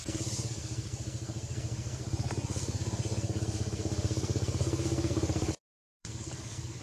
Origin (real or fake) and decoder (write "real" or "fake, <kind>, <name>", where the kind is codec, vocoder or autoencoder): fake, codec, SNAC